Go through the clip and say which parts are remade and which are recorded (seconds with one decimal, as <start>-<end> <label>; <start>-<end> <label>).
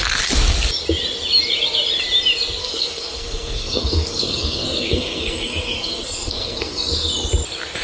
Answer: 0.0-2.6 recorded; 2.6-7.1 remade; 7.1-7.8 recorded